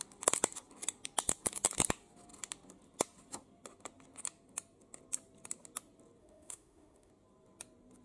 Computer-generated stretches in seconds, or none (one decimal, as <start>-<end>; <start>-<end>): 6.2-7.1